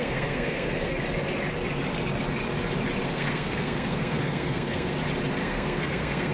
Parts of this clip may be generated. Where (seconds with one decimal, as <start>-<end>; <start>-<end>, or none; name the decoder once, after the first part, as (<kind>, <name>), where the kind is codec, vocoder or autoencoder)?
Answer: 0.0-1.0 (codec, SNAC); 3.0-4.9; 5.4-6.3